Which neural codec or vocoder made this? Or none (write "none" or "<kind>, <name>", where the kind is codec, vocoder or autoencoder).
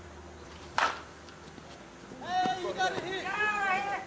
vocoder, BigVGAN v2